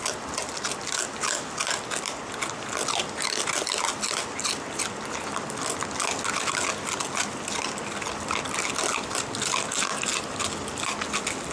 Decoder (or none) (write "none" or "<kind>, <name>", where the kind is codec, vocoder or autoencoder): none